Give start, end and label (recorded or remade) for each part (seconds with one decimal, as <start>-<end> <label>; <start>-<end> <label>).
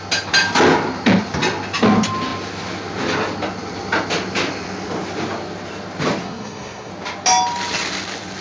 0.0-6.2 recorded; 6.2-6.9 remade; 6.9-8.4 recorded